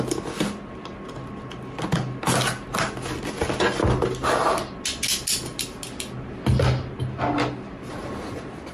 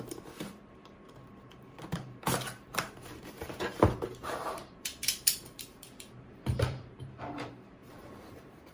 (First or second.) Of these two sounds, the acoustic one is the first